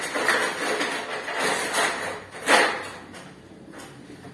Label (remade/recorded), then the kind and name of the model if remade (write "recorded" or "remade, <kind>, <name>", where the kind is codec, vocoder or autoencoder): recorded